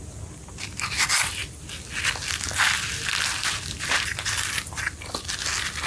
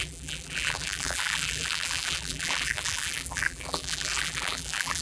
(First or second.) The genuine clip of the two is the first